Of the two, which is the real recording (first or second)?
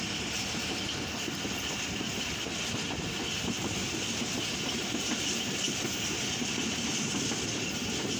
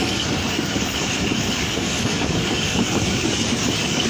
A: first